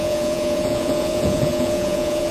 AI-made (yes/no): yes